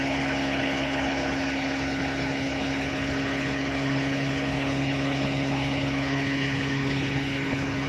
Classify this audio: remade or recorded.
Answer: remade